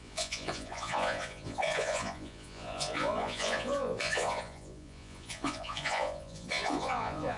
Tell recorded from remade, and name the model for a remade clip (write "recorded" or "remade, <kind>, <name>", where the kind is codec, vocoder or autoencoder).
remade, vocoder, Vocos